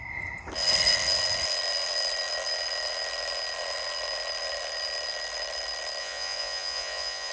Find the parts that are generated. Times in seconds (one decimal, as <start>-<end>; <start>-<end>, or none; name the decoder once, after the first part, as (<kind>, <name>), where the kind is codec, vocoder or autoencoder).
6.0-7.3 (vocoder, Vocos)